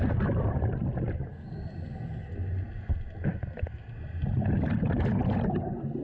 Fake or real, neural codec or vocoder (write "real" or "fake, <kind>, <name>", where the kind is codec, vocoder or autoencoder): real